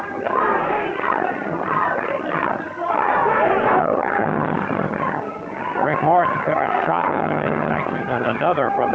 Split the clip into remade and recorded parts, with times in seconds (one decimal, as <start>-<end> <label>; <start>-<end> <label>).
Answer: 0.0-0.4 remade; 0.4-0.9 recorded; 0.9-3.1 remade; 3.1-3.8 recorded; 3.8-8.9 remade